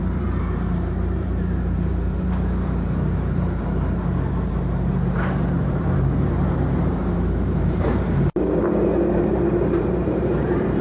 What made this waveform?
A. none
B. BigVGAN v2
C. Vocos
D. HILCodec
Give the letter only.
B